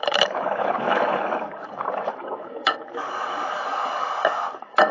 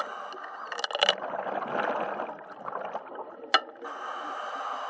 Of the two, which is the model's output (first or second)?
first